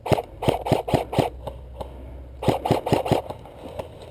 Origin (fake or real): real